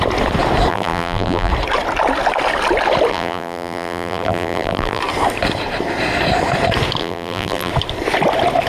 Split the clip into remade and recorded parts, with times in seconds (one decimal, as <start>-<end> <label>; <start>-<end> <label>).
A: 0.0-0.7 recorded; 0.7-1.5 remade; 1.5-3.1 recorded; 3.1-5.0 remade; 5.0-7.0 recorded; 7.0-7.7 remade; 7.7-8.7 recorded